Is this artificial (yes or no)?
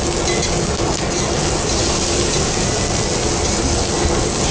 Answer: no